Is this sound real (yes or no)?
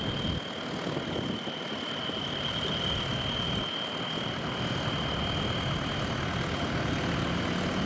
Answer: yes